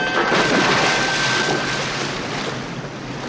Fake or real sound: real